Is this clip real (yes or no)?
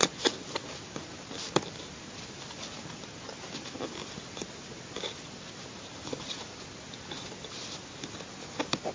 yes